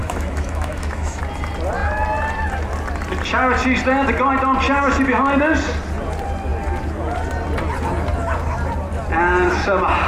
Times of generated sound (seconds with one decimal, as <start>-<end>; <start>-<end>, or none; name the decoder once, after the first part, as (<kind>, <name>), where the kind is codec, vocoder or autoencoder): 0.0-1.2 (autoencoder, DAC-VAE)